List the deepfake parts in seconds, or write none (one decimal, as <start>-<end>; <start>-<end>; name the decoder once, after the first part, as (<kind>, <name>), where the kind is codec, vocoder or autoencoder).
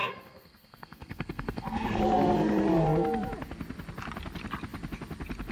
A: 0.0-2.0 (codec, SNAC)